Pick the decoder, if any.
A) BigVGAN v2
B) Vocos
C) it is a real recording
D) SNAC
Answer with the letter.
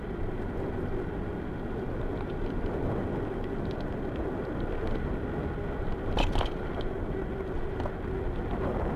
C